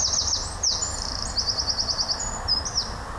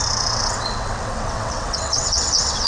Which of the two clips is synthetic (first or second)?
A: second